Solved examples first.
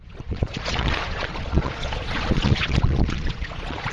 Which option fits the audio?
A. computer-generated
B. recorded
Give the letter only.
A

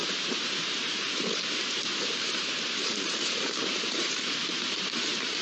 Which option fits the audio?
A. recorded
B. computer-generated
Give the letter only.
B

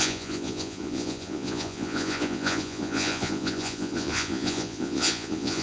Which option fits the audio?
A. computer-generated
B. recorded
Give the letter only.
A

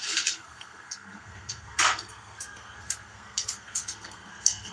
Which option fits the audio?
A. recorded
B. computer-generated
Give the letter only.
B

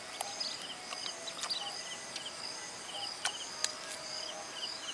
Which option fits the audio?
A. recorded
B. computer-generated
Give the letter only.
A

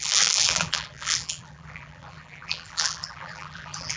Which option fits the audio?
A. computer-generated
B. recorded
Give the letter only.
A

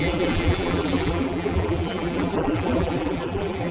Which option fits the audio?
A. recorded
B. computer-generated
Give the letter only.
B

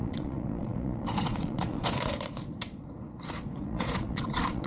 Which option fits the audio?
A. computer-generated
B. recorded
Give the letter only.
A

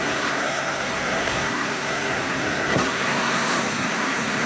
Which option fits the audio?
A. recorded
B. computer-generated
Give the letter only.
B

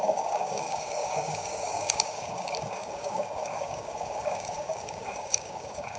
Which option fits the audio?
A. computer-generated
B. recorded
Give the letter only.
A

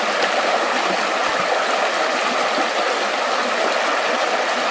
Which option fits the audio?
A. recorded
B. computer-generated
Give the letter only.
A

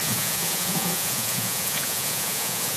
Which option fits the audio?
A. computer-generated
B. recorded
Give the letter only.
A